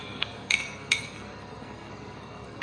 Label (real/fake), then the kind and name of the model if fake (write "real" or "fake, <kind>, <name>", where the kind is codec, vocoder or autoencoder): fake, codec, SNAC